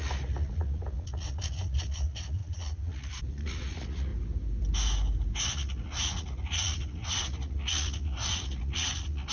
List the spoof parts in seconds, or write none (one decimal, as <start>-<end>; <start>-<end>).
0.0-4.1; 5.4-9.3